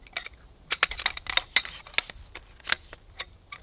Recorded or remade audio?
recorded